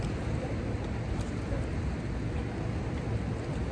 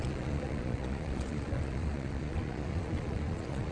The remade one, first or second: second